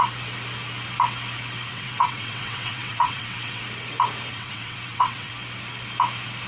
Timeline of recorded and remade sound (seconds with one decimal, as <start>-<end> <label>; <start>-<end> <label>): 0.0-1.7 recorded; 1.7-3.6 remade; 3.6-4.3 recorded; 4.3-5.3 remade; 5.3-6.5 recorded